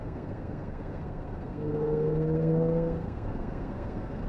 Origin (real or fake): fake